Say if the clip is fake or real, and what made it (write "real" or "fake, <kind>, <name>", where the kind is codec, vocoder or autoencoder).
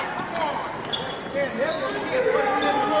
real